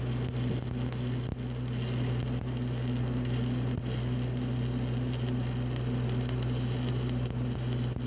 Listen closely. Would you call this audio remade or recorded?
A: recorded